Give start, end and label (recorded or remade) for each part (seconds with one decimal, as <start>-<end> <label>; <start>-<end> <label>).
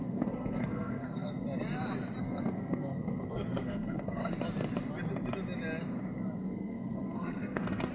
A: 0.0-1.3 remade; 1.3-2.2 recorded; 2.2-4.3 remade; 4.3-6.4 recorded; 6.4-7.9 remade